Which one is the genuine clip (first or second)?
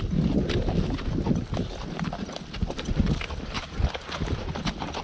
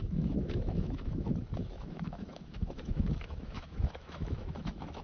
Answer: first